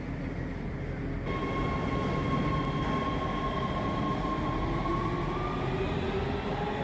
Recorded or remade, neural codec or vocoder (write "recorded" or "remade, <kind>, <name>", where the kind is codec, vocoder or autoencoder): recorded